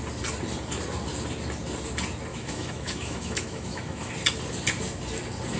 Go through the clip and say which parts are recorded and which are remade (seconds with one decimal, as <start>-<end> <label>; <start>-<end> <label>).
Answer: 0.0-2.3 recorded; 2.3-4.1 remade; 4.1-5.6 recorded